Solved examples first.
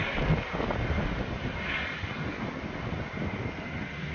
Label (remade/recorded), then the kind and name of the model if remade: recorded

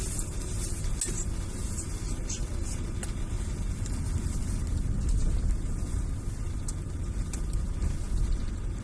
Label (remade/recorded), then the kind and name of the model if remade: recorded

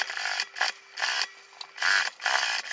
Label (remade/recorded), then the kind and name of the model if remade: recorded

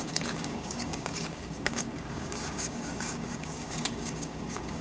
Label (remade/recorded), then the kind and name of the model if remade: remade, codec, DAC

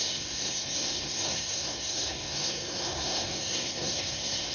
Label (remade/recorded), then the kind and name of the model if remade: remade, codec, SNAC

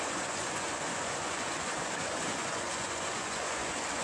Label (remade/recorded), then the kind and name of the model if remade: remade, vocoder, Vocos